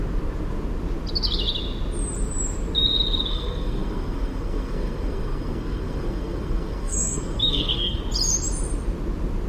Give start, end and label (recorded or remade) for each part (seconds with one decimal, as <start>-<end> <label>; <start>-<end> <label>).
0.0-3.3 recorded; 3.3-8.0 remade; 8.0-9.5 recorded